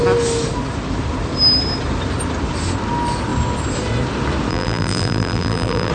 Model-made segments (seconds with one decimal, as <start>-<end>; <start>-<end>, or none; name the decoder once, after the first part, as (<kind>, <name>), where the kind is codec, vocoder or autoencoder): 4.5-5.9 (vocoder, BigVGAN v2)